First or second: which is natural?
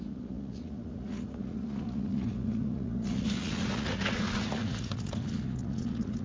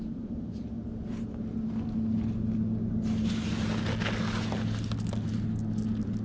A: second